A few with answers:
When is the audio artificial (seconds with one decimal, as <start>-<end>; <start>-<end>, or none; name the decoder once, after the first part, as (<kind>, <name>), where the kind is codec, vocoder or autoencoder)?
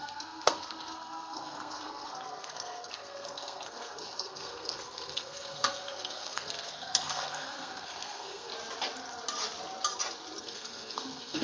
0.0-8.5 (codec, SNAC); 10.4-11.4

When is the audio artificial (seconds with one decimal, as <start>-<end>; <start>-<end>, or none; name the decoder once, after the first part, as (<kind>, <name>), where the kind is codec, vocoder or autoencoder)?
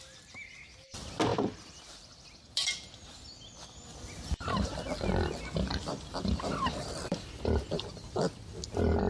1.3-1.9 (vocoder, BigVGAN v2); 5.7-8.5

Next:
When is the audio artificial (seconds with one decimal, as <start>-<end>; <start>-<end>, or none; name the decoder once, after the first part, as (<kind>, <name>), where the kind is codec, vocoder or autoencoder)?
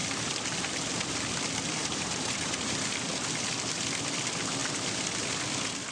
1.8-3.1 (vocoder, BigVGAN v2)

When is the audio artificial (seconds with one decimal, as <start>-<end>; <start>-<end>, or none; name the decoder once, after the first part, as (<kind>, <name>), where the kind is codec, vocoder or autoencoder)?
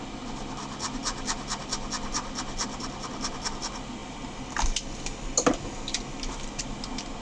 none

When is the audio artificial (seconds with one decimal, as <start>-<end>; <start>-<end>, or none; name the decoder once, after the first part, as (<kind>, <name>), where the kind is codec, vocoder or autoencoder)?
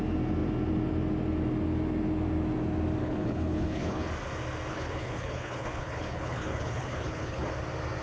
3.0-4.1 (codec, HILCodec); 4.7-7.5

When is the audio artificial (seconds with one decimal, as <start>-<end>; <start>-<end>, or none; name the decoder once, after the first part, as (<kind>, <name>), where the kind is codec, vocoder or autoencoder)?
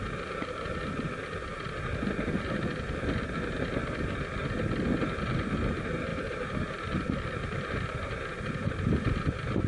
none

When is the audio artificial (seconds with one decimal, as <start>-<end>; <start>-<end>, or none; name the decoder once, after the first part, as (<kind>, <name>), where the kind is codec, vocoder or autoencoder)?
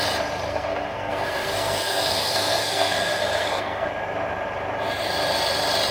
0.5-3.9 (codec, SNAC)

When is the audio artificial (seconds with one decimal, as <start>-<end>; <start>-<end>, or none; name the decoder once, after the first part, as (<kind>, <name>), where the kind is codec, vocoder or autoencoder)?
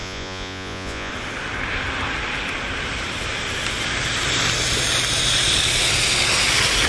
0.0-1.1 (vocoder, Vocos)